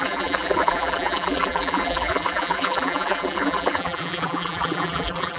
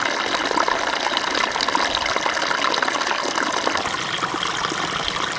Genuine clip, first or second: second